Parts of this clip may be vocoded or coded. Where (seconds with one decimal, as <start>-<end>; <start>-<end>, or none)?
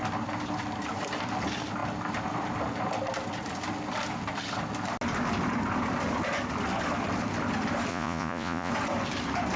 7.9-8.7